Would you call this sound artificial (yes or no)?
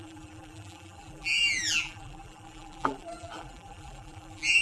yes